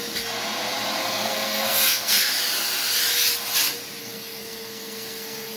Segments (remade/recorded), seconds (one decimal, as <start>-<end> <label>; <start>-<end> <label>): 0.0-1.0 recorded; 1.0-2.3 remade; 2.3-4.0 recorded; 4.0-5.6 remade